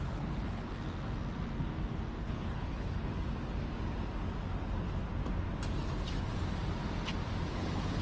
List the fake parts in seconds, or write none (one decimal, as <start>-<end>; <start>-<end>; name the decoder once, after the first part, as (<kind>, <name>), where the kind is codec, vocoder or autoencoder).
0.0-0.7 (codec, HILCodec); 2.2-3.1; 7.5-8.0